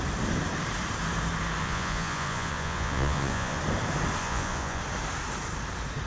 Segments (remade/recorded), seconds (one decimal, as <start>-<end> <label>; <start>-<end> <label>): 0.0-1.6 recorded; 1.6-3.6 remade; 3.6-4.2 recorded; 4.2-4.8 remade; 4.8-6.1 recorded